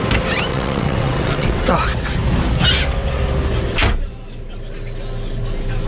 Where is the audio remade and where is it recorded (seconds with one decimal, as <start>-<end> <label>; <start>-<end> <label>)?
0.0-0.5 recorded; 0.5-1.7 remade; 1.7-5.9 recorded